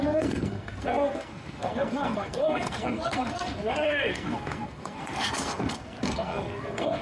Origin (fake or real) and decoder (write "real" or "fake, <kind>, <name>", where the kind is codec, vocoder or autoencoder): fake, codec, SNAC